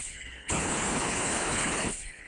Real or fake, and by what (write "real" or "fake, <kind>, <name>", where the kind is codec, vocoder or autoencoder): fake, codec, HILCodec